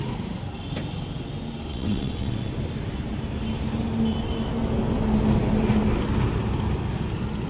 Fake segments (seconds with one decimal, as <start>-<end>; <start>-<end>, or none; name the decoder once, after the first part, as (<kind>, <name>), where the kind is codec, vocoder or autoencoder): 1.7-2.5 (vocoder, WaveNeXt)